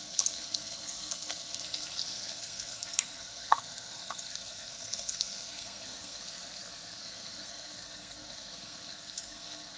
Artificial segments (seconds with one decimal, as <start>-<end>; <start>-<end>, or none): 0.0-9.8